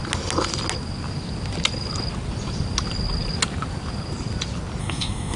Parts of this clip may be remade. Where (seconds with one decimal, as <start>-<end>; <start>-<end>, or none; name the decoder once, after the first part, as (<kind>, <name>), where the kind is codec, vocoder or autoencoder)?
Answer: 4.8-5.4 (codec, SNAC)